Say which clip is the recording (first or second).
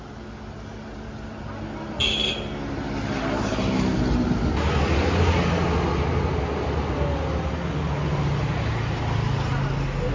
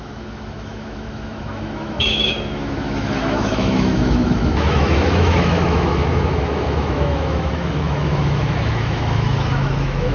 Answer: first